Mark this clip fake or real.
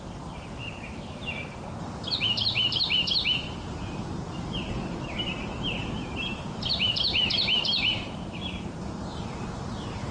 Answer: fake